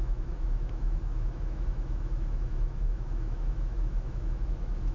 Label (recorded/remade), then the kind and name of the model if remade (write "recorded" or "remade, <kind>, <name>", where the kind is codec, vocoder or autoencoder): remade, autoencoder, DAC-VAE